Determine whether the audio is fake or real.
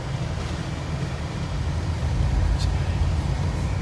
real